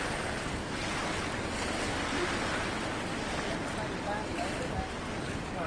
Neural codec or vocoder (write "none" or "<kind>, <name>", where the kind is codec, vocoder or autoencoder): none